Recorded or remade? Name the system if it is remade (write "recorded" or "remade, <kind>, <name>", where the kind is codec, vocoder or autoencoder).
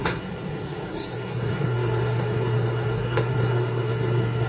remade, codec, SNAC